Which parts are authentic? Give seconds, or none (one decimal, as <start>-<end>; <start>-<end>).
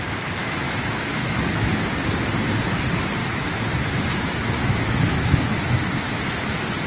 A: 0.0-0.4; 1.7-3.2; 6.2-6.9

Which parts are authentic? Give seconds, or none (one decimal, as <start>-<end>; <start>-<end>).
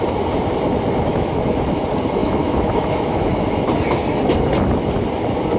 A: 0.0-1.1; 1.8-2.2; 3.4-5.6